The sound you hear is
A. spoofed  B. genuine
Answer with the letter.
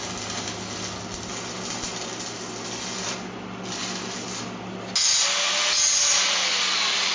B